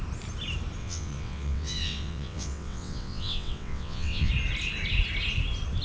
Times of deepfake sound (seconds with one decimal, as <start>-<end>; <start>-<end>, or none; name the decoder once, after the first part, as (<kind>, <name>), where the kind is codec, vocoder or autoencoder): 0.8-4.3 (vocoder, WaveNeXt)